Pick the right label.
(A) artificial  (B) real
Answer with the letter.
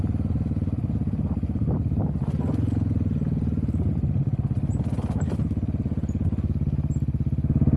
B